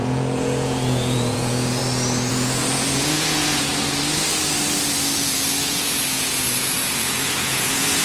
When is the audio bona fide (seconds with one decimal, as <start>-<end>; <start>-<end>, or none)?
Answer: 1.8-2.3; 3.7-5.6